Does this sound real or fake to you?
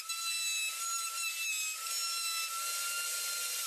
real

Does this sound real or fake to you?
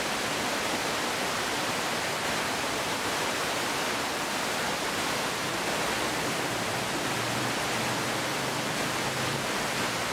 fake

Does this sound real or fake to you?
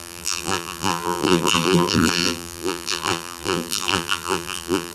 fake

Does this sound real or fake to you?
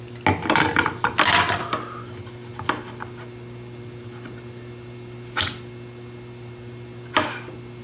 real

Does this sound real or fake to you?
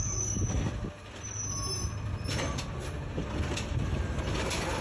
real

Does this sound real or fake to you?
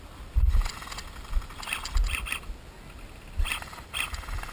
real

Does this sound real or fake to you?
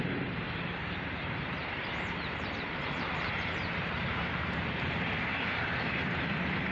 fake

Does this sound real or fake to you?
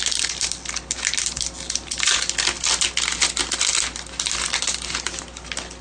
real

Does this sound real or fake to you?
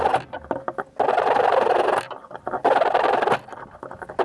real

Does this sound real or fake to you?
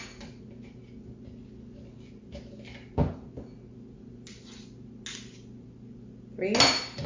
real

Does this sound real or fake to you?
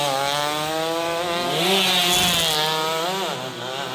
real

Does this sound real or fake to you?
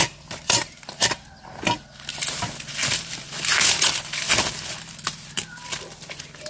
real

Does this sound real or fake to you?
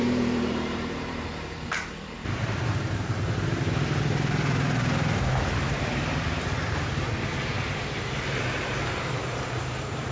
fake